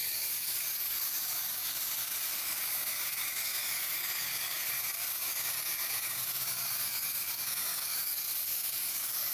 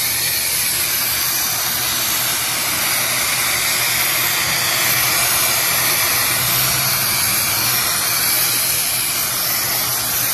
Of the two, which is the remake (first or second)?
first